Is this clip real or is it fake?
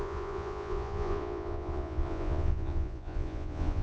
fake